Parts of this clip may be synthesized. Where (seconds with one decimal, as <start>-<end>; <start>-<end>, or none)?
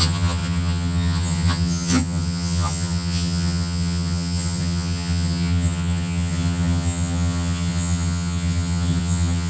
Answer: 0.0-9.5